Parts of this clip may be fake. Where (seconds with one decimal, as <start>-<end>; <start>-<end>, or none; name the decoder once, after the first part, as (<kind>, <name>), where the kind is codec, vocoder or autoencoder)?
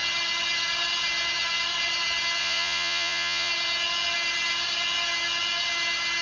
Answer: 2.4-3.5 (vocoder, Vocos)